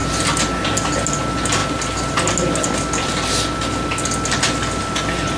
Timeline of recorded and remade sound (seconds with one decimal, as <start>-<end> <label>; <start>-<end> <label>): 0.0-5.4 recorded